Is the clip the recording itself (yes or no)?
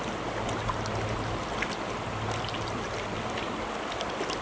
yes